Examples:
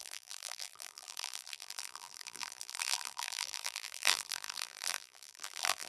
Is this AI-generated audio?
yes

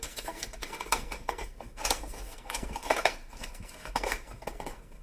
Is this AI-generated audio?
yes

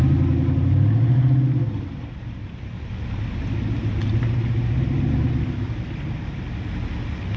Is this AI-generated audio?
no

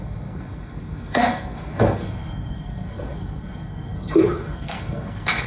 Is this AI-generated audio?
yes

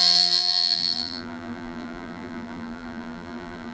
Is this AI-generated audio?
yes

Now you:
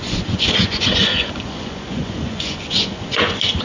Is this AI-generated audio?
yes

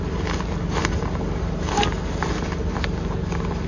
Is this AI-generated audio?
no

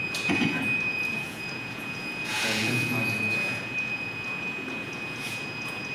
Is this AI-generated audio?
yes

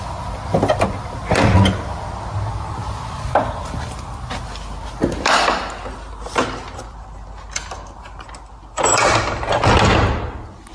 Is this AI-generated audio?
no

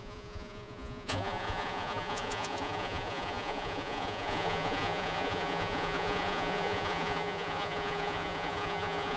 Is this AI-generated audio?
yes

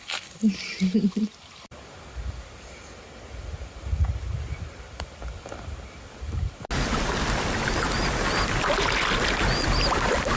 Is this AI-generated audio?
no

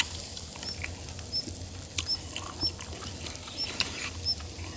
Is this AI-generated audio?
no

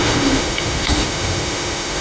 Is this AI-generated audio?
yes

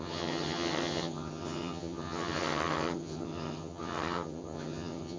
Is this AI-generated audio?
yes